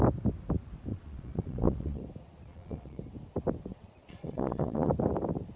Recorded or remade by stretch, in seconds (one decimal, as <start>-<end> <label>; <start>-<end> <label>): 0.0-0.9 recorded; 0.9-2.0 remade; 2.0-2.5 recorded; 2.5-3.0 remade; 3.0-3.7 recorded; 3.7-4.9 remade; 4.9-5.6 recorded